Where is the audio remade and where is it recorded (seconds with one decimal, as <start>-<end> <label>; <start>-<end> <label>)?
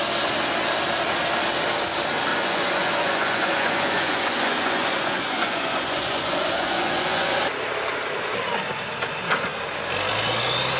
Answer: 0.0-2.3 recorded; 2.3-7.4 remade; 7.4-10.8 recorded